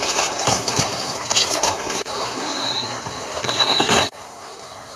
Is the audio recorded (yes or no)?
no